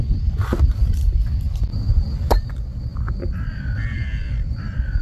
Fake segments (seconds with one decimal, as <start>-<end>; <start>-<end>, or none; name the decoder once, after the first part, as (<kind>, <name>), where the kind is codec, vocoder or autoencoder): none